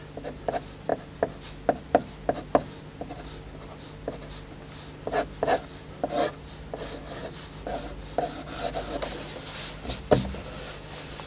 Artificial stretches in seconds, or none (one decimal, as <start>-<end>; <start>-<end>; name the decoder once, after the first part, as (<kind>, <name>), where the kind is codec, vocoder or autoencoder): none